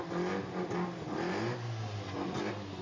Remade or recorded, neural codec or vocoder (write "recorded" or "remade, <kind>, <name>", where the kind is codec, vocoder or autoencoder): recorded